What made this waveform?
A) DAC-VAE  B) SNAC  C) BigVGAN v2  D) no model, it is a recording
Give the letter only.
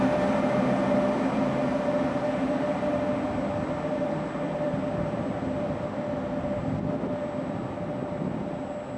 D